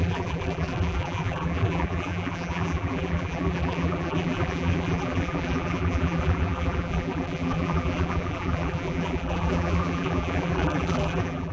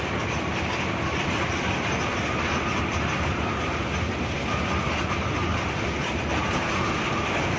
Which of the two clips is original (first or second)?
second